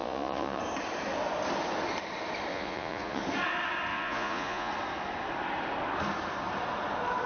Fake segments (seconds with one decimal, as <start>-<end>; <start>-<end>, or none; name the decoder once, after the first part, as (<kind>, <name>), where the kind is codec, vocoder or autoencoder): 0.0-0.6 (vocoder, Vocos); 2.5-3.2; 3.9-4.7